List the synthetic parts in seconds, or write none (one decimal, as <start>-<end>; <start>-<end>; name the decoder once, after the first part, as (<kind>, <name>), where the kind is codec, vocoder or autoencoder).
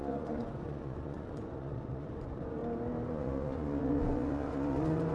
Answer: 0.0-2.6 (vocoder, Vocos); 3.1-5.1